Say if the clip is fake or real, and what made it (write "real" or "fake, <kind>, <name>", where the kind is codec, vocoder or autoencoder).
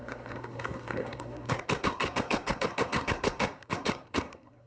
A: fake, codec, SNAC